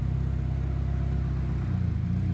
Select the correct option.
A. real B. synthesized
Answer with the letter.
A